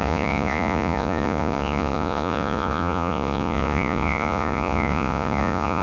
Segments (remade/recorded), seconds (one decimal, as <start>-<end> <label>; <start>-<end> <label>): 0.0-5.8 remade